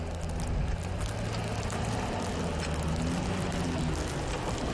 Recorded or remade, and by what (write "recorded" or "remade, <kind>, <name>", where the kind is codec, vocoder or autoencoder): recorded